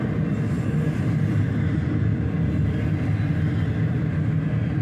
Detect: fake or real real